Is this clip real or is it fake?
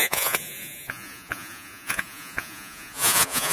fake